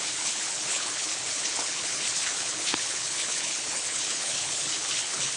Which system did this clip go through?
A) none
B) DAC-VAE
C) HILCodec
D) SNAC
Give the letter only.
C